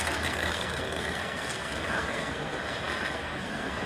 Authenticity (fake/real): fake